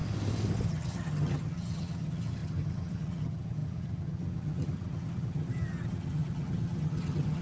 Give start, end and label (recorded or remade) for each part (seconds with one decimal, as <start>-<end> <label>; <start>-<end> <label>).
0.0-0.7 recorded; 0.7-7.4 remade